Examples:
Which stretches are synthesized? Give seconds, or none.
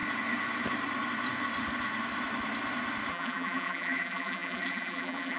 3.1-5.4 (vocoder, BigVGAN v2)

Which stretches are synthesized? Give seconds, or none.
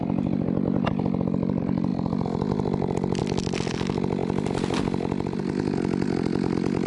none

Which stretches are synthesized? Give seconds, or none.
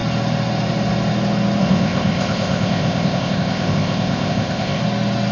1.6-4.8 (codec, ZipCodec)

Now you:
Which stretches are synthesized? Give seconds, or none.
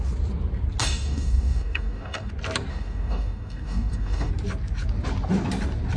0.8-2.3 (codec, DAC); 2.7-4.3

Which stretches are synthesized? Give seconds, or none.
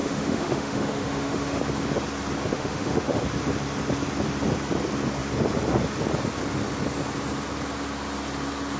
0.0-1.6 (autoencoder, DAC-VAE); 2.5-3.2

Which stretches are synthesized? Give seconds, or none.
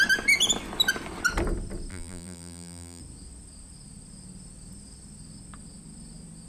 1.9-3.0 (vocoder, BigVGAN v2)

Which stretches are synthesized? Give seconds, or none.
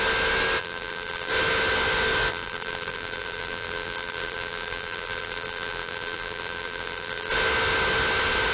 0.6-1.3 (vocoder, BigVGAN v2); 2.3-7.3